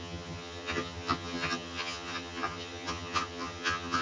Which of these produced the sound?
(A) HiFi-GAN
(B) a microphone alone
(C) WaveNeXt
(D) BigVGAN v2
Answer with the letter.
A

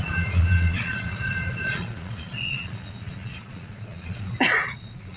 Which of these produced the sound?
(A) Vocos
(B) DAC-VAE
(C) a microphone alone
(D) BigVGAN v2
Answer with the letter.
A